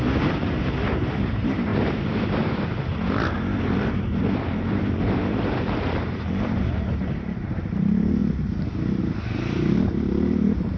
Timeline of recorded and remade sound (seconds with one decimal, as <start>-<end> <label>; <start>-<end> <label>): 0.0-1.7 remade; 1.7-3.9 recorded; 3.9-10.8 remade